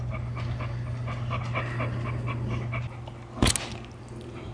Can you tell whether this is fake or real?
real